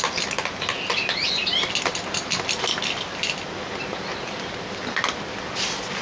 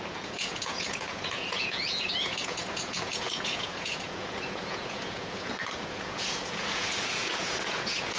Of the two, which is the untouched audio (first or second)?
first